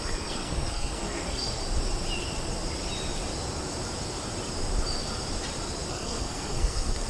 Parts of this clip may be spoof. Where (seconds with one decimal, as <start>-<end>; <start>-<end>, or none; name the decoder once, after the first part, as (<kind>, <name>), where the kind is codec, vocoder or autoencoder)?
0.0-1.6 (codec, SNAC); 5.9-7.1